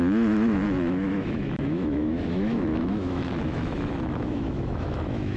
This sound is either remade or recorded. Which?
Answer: remade